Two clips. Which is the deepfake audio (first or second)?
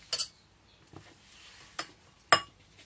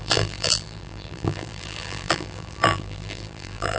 second